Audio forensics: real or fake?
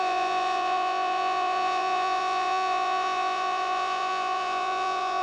fake